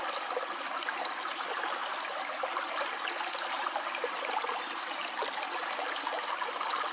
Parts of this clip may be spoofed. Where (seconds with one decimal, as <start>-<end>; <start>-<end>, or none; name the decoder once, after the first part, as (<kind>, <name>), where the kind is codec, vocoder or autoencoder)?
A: none